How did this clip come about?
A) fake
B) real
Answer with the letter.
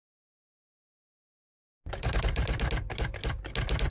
B